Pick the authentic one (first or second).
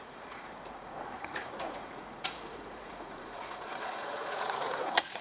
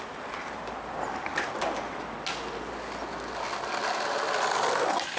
second